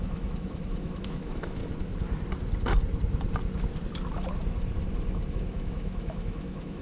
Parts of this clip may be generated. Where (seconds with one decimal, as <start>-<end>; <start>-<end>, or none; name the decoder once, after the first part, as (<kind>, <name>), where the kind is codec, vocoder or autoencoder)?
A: 0.0-1.6 (autoencoder, DAC-VAE); 5.3-6.8